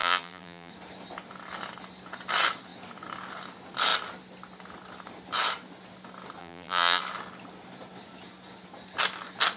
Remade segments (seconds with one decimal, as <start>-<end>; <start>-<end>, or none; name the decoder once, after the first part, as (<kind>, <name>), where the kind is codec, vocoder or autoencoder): 0.0-0.7 (vocoder, BigVGAN v2); 6.4-7.0